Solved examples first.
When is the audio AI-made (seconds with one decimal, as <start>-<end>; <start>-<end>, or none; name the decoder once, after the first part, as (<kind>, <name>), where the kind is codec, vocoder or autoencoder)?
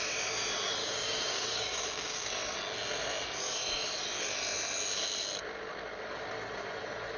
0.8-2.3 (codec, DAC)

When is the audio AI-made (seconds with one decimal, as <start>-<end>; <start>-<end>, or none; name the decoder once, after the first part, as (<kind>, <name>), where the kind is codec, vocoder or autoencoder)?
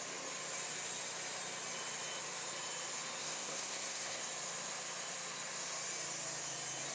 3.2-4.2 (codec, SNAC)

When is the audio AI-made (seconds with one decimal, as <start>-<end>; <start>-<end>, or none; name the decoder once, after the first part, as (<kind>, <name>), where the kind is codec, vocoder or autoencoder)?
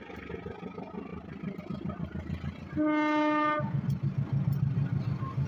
none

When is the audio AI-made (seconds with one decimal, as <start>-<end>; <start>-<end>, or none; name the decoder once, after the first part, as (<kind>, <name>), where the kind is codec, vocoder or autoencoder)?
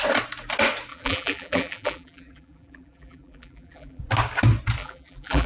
0.9-4.0 (vocoder, BigVGAN v2); 4.8-5.5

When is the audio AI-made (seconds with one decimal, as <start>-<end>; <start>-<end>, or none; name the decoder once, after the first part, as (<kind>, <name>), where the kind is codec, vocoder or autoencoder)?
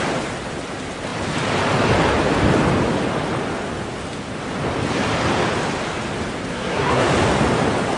6.5-7.1 (codec, SNAC)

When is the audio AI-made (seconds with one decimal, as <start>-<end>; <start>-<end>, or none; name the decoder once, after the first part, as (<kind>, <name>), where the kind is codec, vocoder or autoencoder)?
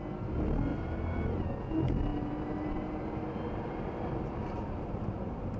0.7-1.5 (vocoder, BigVGAN v2); 2.1-5.6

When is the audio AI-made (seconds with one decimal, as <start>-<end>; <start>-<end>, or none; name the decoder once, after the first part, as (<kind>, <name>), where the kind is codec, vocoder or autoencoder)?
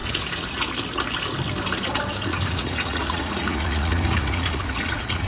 0.0-0.6 (vocoder, Vocos); 2.3-5.3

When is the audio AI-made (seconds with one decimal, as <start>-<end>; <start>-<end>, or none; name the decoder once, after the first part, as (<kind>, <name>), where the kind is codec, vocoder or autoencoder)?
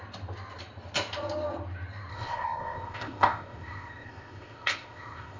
2.1-5.4 (codec, ZipCodec)